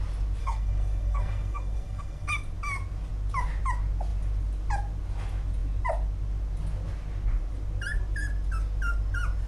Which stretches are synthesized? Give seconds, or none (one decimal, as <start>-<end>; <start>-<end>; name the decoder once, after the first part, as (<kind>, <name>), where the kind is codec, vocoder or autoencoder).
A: 0.4-2.3 (codec, SNAC)